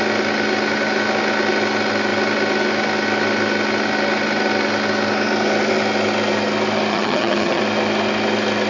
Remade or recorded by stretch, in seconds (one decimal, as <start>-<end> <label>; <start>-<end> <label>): 0.0-6.9 recorded; 6.9-7.6 remade; 7.6-8.7 recorded